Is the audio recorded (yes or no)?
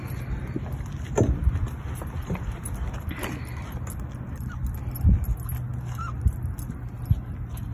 yes